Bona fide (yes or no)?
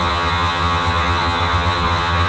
no